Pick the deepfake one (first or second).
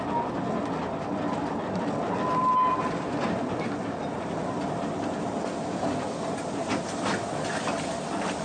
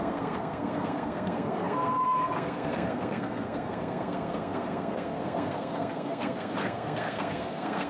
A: second